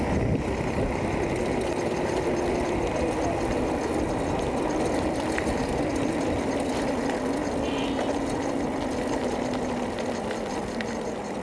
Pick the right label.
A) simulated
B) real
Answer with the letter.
B